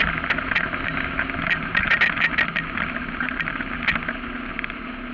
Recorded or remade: recorded